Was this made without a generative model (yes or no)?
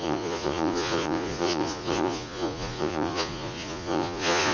no